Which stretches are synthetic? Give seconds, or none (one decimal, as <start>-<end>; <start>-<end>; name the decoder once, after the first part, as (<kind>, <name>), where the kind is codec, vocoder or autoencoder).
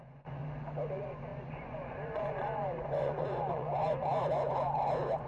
0.0-0.4 (vocoder, Vocos); 0.9-5.3